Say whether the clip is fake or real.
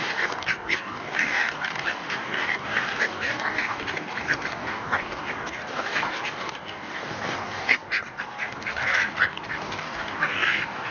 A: fake